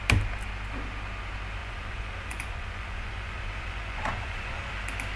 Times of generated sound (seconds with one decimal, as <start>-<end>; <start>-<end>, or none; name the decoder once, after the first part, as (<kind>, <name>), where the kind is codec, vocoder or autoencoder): 1.6-4.7 (vocoder, Vocos)